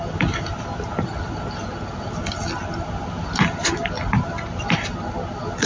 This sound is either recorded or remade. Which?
recorded